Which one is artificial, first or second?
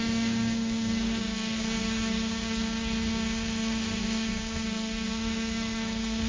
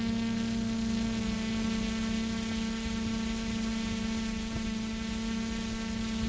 first